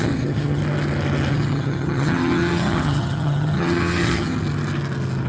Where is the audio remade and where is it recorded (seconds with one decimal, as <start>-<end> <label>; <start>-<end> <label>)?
0.0-0.6 remade; 0.6-1.3 recorded; 1.3-4.3 remade; 4.3-5.3 recorded